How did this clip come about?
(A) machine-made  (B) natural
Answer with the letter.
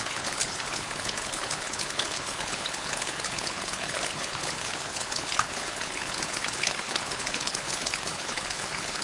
A